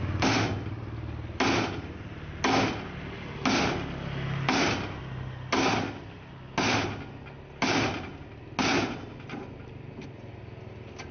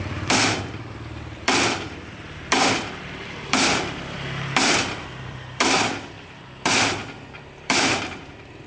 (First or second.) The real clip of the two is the first